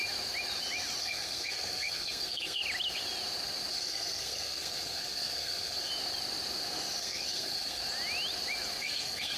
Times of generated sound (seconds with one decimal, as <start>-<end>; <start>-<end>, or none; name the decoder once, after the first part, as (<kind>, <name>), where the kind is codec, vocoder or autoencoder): 1.0-2.6 (codec, SNAC); 3.7-5.9; 7.0-7.8; 8.8-9.4